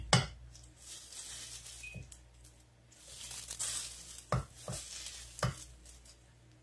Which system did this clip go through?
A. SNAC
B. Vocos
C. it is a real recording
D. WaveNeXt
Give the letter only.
C